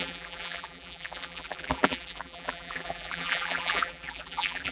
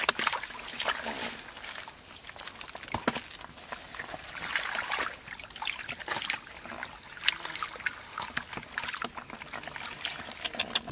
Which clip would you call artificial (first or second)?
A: first